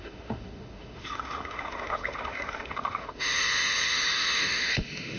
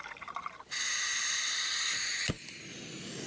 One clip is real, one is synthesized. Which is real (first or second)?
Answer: second